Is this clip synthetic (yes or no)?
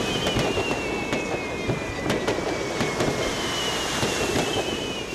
no